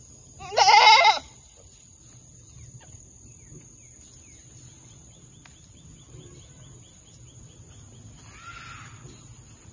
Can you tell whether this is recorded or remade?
recorded